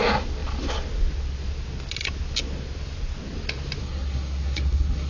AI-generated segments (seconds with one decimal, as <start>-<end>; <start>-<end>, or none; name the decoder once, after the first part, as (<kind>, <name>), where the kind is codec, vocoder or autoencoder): 3.8-5.1 (codec, SNAC)